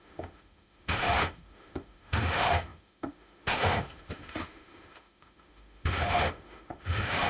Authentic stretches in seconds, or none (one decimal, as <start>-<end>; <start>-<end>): none